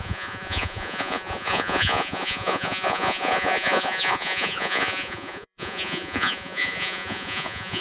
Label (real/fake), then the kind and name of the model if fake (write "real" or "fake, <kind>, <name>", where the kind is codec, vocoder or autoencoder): fake, vocoder, Vocos